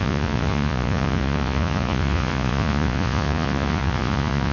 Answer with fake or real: fake